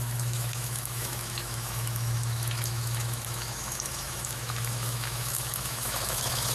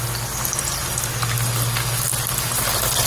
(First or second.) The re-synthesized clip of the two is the first